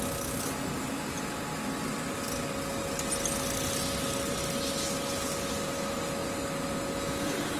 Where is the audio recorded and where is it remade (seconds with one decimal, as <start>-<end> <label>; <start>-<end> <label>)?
0.0-7.6 recorded